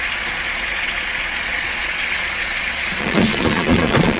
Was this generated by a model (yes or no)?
yes